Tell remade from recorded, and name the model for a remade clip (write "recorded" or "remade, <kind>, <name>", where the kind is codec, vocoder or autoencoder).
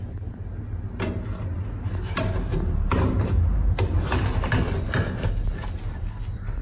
recorded